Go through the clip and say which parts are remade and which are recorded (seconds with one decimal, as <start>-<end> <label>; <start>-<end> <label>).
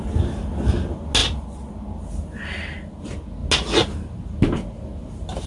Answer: 0.0-5.5 recorded